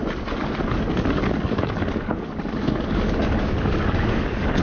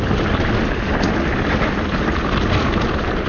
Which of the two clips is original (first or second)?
second